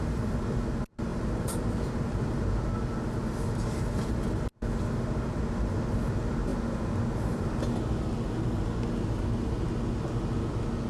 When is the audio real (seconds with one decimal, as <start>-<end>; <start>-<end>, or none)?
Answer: 0.0-1.1; 2.4-10.9